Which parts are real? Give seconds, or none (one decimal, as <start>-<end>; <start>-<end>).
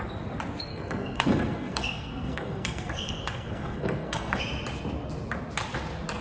0.0-0.7; 4.4-6.2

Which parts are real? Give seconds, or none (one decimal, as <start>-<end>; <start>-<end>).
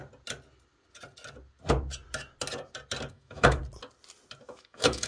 0.0-3.1; 3.6-4.4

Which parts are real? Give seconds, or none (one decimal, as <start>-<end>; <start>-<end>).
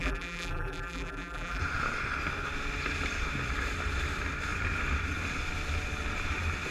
1.6-6.7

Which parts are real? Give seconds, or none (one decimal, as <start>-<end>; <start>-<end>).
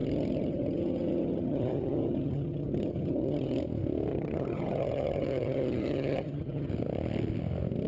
3.6-4.1; 6.7-7.9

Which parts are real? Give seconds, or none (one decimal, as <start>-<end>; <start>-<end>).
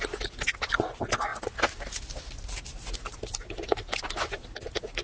0.0-5.0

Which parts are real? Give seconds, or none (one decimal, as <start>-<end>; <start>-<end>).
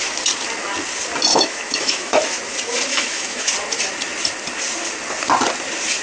0.0-1.3; 2.2-2.9; 3.5-6.0